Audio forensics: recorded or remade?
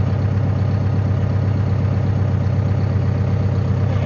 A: recorded